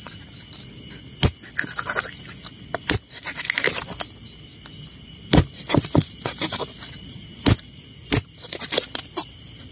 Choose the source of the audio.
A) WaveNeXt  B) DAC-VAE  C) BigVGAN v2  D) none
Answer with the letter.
D